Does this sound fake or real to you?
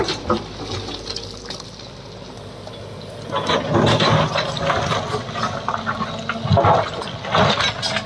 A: real